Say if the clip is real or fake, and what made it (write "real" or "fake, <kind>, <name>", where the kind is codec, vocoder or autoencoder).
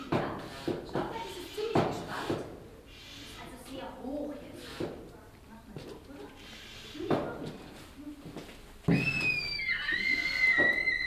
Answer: real